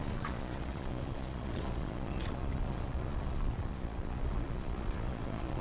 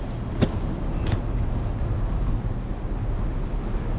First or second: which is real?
second